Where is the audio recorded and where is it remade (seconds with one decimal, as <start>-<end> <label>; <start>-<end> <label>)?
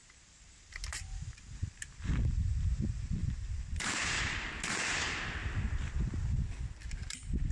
0.0-1.8 remade; 1.8-3.2 recorded; 3.2-4.5 remade; 4.5-7.5 recorded